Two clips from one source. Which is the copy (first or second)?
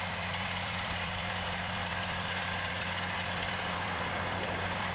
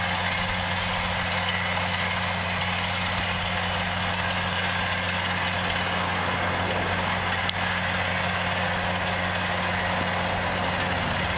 first